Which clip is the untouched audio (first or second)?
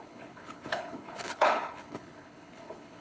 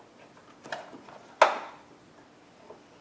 second